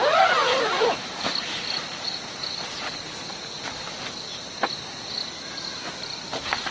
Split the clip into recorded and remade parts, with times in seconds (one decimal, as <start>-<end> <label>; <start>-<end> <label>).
0.0-6.7 remade